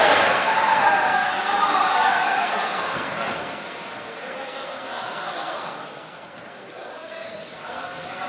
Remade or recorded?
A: remade